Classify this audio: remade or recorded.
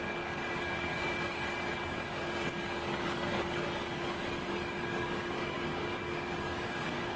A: remade